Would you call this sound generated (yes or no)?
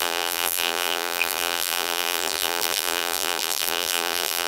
yes